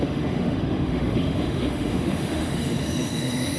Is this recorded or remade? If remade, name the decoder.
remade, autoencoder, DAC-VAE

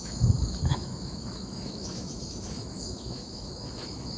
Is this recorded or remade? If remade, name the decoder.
remade, autoencoder, DAC-VAE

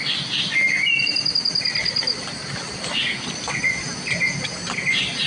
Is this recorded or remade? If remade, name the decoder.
recorded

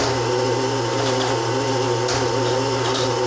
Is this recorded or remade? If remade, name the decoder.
recorded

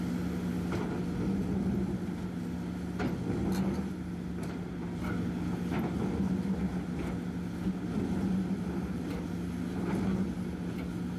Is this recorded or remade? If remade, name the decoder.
recorded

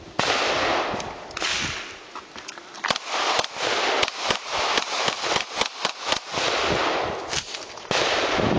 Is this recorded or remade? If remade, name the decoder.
recorded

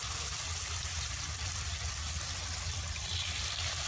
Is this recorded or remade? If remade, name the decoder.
recorded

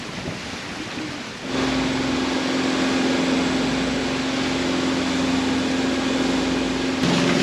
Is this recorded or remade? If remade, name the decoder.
recorded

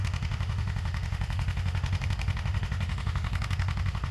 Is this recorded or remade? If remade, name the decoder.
remade, autoencoder, DAC-VAE